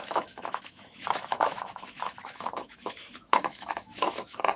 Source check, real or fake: fake